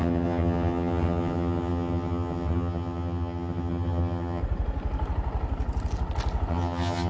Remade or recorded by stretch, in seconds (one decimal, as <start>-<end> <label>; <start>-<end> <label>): 0.0-4.4 remade; 4.4-6.5 recorded; 6.5-7.1 remade

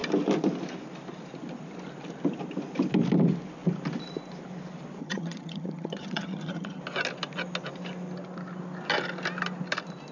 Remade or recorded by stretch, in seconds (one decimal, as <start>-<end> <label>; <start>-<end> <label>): 0.0-5.0 recorded; 5.0-6.8 remade; 6.8-10.1 recorded

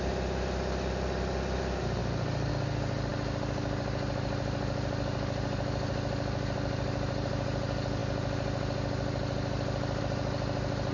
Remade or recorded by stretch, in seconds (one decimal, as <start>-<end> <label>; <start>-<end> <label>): 0.0-10.9 recorded

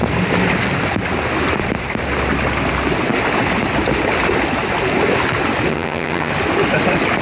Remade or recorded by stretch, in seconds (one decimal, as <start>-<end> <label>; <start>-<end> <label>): 0.0-5.7 recorded; 5.7-6.3 remade; 6.3-7.2 recorded

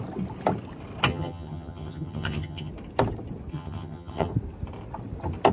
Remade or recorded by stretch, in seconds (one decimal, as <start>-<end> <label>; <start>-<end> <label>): 0.0-1.1 recorded; 1.1-2.7 remade; 2.7-3.5 recorded; 3.5-4.3 remade; 4.3-5.5 recorded

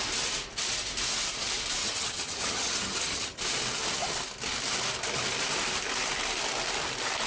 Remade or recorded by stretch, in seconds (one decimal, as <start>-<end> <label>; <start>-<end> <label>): 0.0-1.8 recorded; 1.8-3.4 remade; 3.4-7.3 recorded

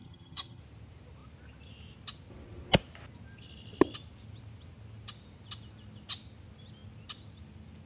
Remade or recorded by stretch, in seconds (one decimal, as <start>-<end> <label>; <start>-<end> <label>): 0.0-0.6 remade; 0.6-7.9 recorded